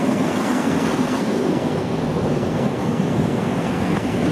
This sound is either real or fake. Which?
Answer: fake